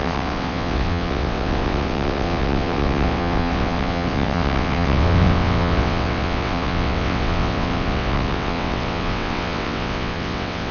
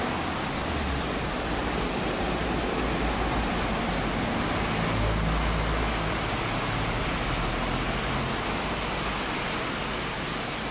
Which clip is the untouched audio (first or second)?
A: second